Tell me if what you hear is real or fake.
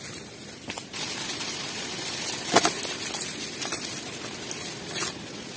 real